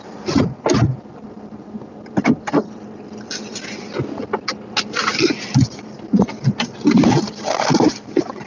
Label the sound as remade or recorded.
recorded